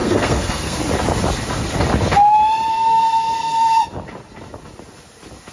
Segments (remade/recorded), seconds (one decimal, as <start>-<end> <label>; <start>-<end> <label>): 0.0-0.8 remade; 0.8-2.7 recorded; 2.7-3.8 remade; 3.8-5.5 recorded